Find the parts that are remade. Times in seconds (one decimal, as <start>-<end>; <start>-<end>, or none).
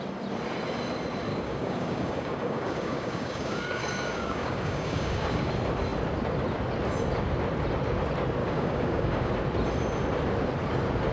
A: 1.3-5.5; 8.4-9.3